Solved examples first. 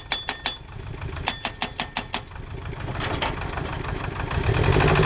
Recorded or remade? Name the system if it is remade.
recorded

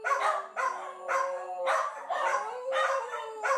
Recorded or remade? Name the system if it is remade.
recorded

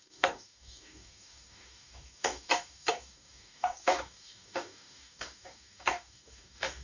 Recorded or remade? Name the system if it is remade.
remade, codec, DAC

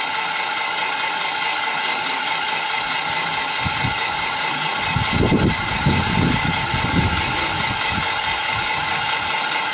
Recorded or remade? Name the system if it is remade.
remade, codec, DAC